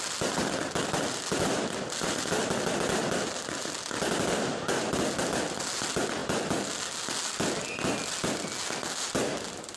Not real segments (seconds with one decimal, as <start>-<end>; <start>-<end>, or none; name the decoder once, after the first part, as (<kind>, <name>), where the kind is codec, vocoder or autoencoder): none